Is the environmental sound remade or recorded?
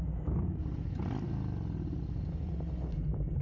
recorded